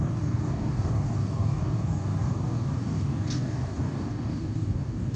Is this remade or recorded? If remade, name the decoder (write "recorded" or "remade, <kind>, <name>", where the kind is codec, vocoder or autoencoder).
remade, codec, DAC